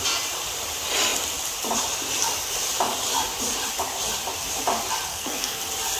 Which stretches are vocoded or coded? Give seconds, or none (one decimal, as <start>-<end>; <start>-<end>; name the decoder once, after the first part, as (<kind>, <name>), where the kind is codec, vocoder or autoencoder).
5.1-5.6 (codec, SNAC)